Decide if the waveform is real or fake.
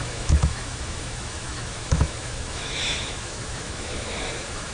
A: fake